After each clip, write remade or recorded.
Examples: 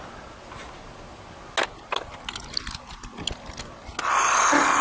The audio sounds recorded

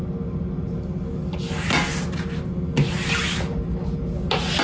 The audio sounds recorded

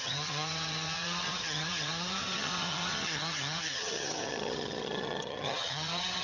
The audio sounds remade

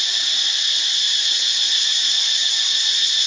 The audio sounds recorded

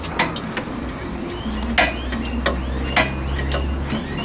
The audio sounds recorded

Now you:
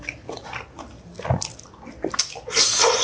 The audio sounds recorded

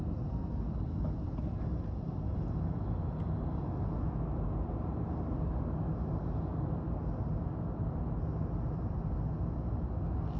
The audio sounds recorded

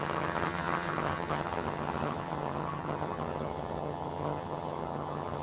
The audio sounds remade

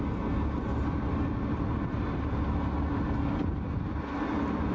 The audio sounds recorded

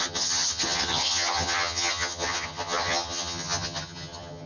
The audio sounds remade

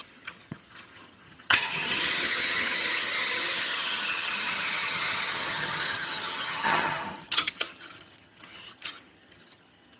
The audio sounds remade